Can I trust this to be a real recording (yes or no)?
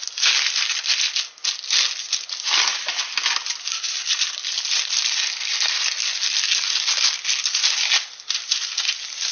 yes